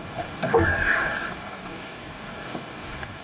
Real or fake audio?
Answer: fake